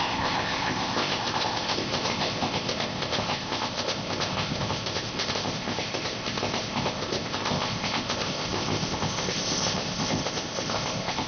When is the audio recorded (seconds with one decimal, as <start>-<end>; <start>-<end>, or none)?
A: none